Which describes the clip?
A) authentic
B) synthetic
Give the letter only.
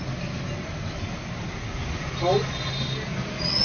A